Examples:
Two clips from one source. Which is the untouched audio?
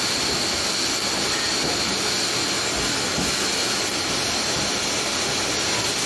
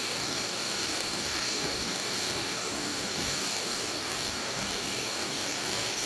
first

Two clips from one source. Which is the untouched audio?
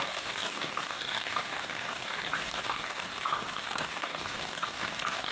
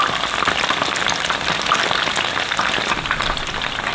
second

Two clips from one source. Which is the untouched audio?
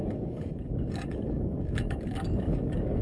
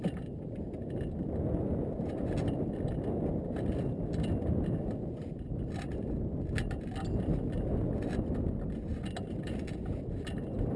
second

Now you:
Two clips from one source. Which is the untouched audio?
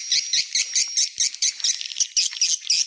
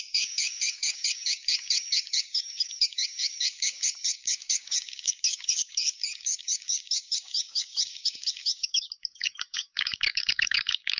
first